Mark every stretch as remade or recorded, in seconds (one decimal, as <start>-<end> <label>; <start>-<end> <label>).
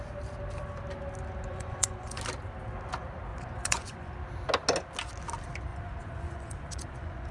0.0-1.5 recorded; 1.5-2.2 remade; 2.2-3.3 recorded; 3.3-4.1 remade; 4.1-5.7 recorded; 5.7-7.3 remade